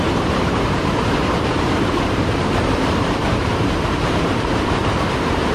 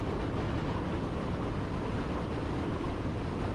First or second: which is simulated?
first